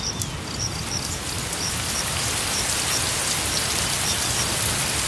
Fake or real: real